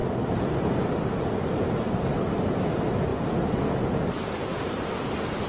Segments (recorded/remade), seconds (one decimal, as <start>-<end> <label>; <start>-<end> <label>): 0.0-5.5 recorded